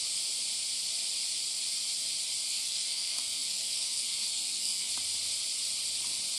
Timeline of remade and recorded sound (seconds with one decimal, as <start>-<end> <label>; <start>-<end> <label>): 0.0-2.5 recorded; 2.5-4.9 remade; 4.9-6.4 recorded